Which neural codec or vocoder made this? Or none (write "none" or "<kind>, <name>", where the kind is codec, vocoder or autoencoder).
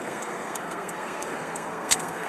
codec, SNAC